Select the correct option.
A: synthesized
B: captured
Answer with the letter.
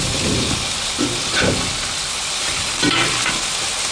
B